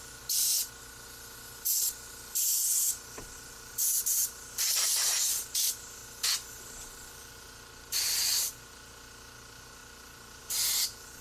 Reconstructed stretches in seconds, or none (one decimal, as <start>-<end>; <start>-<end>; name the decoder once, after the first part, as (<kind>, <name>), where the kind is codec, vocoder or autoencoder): 0.0-0.5 (vocoder, BigVGAN v2); 2.8-6.0; 6.5-11.2